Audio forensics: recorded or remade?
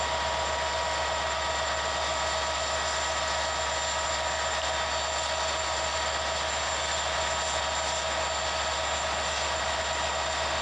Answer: recorded